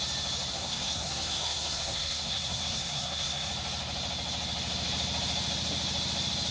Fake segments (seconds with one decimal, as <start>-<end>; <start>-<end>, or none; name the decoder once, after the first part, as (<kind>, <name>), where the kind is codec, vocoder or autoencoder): 0.5-3.5 (codec, SNAC)